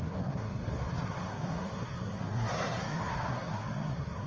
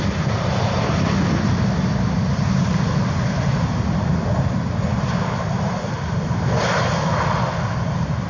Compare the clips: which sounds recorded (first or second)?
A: second